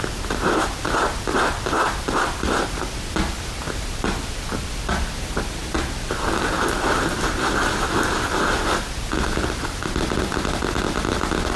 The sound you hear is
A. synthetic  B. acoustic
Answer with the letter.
B